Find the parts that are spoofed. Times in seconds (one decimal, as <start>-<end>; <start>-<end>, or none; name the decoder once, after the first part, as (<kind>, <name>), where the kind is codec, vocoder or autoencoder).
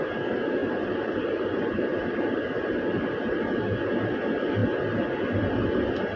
0.6-3.9 (vocoder, BigVGAN v2)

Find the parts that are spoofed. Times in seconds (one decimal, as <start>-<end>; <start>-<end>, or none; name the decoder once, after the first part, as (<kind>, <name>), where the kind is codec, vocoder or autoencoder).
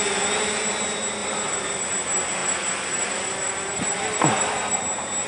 1.2-1.8 (vocoder, BigVGAN v2); 2.4-4.8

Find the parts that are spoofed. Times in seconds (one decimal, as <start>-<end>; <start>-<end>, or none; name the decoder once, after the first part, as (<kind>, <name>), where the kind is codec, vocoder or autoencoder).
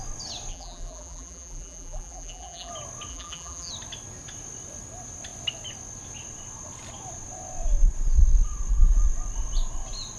0.5-2.7 (vocoder, BigVGAN v2); 3.1-3.7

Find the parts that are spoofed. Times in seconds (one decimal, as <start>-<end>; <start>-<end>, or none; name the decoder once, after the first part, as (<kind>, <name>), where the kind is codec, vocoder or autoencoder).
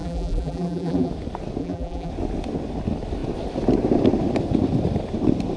0.0-1.1 (vocoder, BigVGAN v2); 1.6-2.1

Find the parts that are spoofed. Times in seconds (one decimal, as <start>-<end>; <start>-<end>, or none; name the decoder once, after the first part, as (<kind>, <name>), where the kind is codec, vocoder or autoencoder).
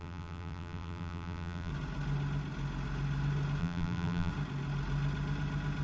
0.0-1.7 (vocoder, BigVGAN v2); 3.6-4.3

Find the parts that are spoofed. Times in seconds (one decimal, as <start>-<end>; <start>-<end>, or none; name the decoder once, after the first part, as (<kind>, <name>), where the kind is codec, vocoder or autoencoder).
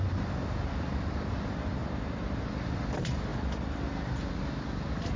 1.8-2.5 (vocoder, BigVGAN v2)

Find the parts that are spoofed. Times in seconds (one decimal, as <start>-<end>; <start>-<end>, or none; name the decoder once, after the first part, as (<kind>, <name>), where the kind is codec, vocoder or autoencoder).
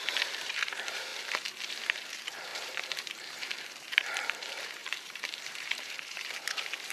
0.0-1.1 (vocoder, BigVGAN v2); 1.7-6.9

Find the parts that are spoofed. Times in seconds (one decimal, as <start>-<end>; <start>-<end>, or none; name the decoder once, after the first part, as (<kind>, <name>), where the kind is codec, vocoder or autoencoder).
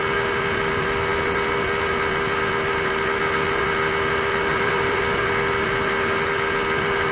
4.5-5.0 (vocoder, BigVGAN v2)